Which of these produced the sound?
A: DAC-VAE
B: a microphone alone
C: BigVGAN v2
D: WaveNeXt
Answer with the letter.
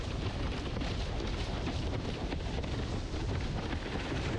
C